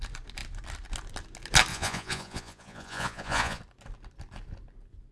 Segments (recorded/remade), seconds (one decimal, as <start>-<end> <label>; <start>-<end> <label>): 0.0-1.7 recorded; 1.7-3.6 remade; 3.6-5.1 recorded